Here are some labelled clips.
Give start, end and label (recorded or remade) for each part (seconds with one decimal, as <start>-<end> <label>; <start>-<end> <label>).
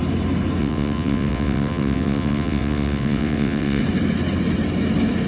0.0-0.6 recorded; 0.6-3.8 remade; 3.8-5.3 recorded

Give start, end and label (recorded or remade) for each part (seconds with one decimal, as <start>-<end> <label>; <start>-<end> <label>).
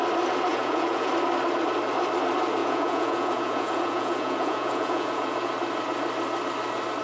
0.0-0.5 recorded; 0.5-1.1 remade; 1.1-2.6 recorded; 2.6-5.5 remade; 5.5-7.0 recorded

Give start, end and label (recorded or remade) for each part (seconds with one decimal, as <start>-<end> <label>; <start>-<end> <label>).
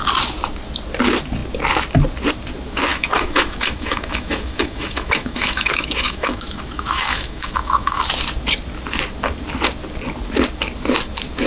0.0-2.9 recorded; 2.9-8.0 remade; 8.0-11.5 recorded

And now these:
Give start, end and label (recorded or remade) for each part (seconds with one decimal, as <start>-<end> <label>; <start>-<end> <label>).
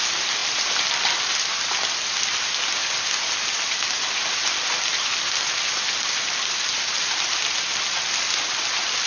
0.0-2.8 recorded; 2.8-4.3 remade; 4.3-9.1 recorded